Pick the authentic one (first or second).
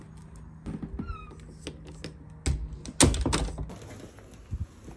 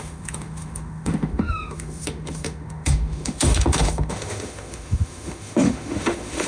first